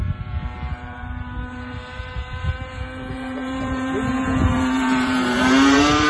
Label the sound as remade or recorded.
remade